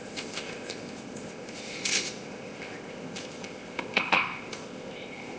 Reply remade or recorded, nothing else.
remade